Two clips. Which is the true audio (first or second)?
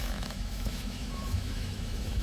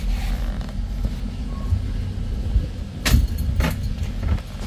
second